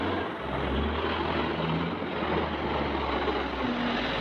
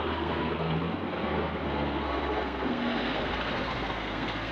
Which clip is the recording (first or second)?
first